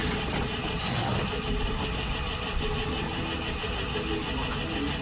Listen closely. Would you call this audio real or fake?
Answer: real